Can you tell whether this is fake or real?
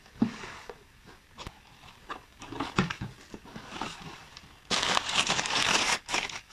fake